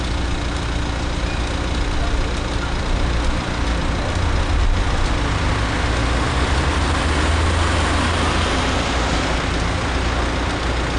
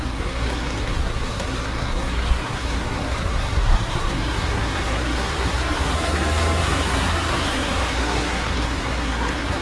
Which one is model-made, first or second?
second